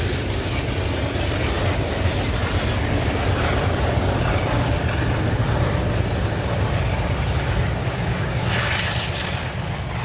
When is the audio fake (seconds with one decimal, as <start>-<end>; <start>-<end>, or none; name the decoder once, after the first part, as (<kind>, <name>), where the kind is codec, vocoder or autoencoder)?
7.8-8.4 (codec, DAC)